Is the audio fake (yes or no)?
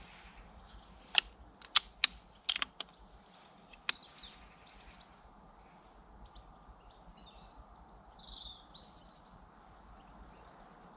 no